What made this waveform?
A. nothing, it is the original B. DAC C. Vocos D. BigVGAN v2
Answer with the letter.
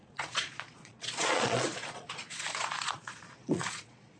C